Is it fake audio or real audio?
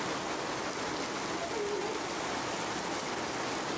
real